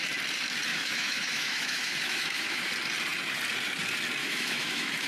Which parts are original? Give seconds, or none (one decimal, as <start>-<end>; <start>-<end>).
0.0-0.7; 2.7-4.2